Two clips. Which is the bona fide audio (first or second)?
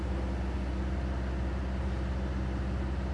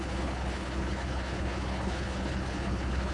first